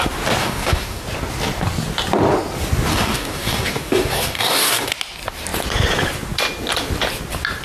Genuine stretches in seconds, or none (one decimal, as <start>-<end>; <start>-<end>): 0.0-0.4; 1.0-2.9; 4.9-7.6